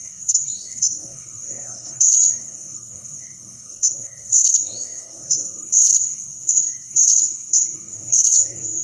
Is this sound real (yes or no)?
no